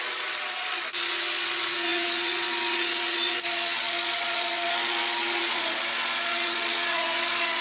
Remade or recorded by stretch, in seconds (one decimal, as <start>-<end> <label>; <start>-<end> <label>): 0.0-7.6 remade